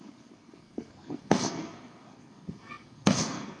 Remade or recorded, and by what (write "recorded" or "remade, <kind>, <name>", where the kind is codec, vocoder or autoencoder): remade, codec, SNAC